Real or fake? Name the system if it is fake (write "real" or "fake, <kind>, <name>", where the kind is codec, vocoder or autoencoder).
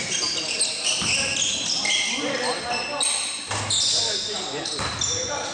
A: real